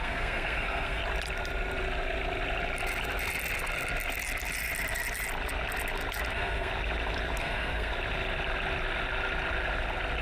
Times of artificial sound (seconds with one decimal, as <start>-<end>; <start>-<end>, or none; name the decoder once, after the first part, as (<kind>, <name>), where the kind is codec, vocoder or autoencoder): 0.0-1.0 (codec, SNAC); 6.3-6.7; 7.4-7.9